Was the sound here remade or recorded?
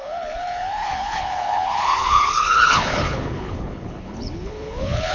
remade